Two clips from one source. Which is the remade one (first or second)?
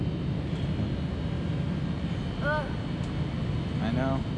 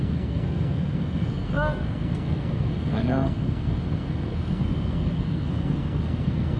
second